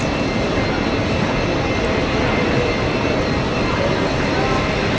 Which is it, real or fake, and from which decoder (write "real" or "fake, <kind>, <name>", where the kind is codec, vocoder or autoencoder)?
real